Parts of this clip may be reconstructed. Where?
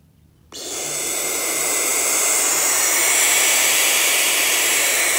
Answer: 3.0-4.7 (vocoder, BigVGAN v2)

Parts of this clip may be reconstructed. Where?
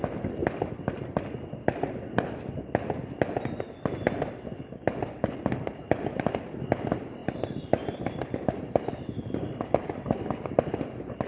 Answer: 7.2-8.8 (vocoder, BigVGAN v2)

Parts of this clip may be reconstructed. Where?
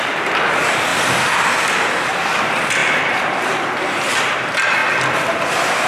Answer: 0.0-0.9 (vocoder, BigVGAN v2); 2.4-4.8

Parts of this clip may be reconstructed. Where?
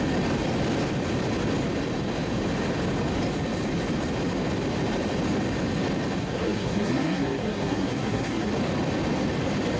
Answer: 6.2-8.5 (codec, SNAC)